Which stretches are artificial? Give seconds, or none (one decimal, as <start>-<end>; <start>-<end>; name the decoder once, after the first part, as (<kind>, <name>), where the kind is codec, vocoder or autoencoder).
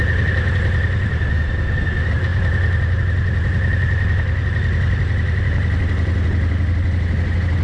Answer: none